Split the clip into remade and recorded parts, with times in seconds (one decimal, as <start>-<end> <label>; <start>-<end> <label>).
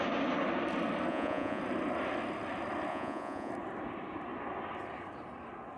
0.0-1.1 recorded; 1.1-1.6 remade; 1.6-2.9 recorded; 2.9-3.5 remade; 3.5-5.8 recorded